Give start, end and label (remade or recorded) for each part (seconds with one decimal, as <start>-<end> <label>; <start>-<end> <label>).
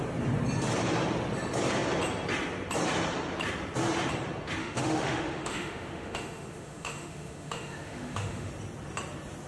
0.0-4.6 recorded; 4.6-8.5 remade; 8.5-9.5 recorded